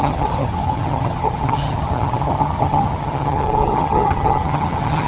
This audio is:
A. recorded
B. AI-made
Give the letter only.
B